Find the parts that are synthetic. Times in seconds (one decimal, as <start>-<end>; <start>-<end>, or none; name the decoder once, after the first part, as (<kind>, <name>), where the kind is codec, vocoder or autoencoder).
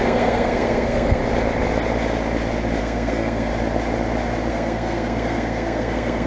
0.0-1.2 (codec, SNAC); 2.8-3.5; 4.5-6.3